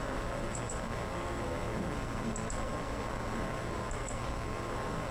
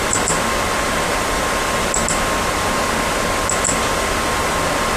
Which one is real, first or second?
second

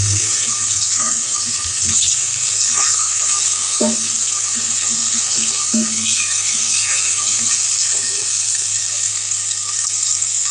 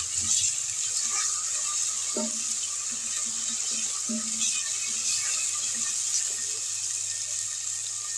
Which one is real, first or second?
second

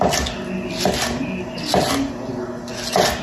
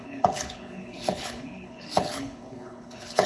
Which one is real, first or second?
first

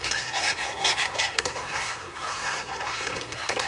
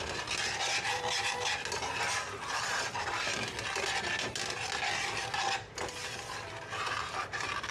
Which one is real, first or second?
second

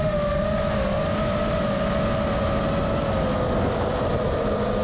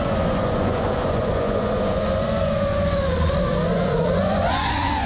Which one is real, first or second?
first